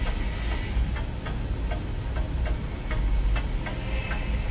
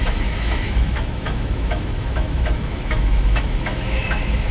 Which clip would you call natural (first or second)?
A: first